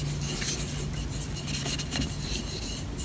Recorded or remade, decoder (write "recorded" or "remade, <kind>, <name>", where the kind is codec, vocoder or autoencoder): recorded